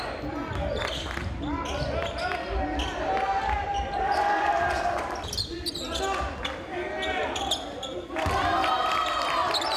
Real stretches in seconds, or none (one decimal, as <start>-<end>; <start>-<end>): 0.0-3.7; 5.5-9.8